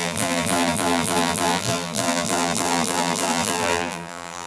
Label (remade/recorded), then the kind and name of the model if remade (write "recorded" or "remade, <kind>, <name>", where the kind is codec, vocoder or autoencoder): remade, vocoder, BigVGAN v2